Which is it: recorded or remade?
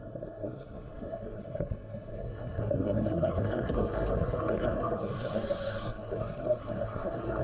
remade